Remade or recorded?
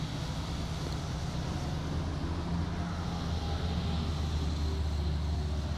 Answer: recorded